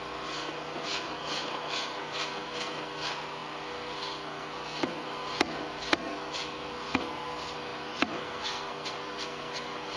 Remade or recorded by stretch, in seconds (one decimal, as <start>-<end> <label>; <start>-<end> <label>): 0.0-10.0 remade